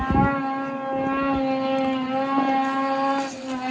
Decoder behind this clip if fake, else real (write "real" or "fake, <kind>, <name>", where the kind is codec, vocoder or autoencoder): real